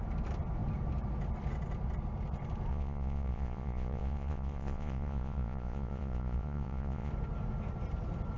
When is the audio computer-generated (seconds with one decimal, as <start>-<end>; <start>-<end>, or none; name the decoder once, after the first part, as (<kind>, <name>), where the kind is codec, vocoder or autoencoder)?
2.7-7.1 (vocoder, Vocos)